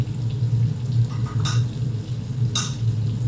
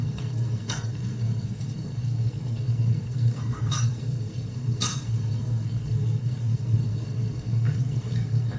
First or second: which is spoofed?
second